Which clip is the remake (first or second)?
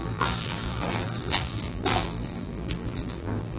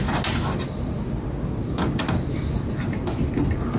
first